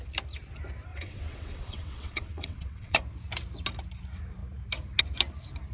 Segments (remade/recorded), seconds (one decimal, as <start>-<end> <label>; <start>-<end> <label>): 0.0-0.9 recorded; 0.9-3.0 remade; 3.0-5.7 recorded